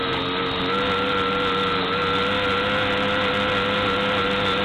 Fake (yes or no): no